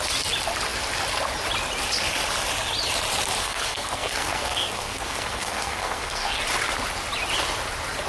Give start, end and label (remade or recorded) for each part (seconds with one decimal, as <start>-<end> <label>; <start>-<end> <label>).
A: 0.0-3.4 recorded; 3.4-6.4 remade; 6.4-8.1 recorded